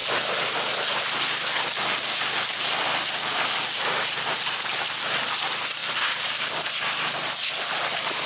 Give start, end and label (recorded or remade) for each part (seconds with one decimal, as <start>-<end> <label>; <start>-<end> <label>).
0.0-8.3 recorded